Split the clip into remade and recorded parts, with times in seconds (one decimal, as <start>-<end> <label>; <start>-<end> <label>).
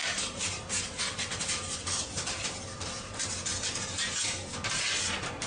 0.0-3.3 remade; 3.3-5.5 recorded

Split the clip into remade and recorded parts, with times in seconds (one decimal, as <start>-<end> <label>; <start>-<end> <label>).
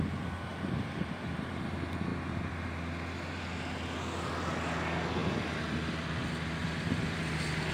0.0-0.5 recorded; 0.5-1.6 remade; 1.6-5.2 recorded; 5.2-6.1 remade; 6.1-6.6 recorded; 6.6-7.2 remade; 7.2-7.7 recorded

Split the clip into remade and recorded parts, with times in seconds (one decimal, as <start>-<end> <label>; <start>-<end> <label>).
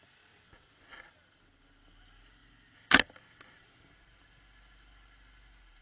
0.0-5.8 recorded